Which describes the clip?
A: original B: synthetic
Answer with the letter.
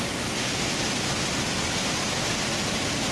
A